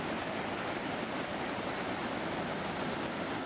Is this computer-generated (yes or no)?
no